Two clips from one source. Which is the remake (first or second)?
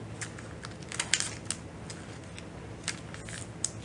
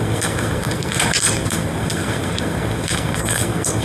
second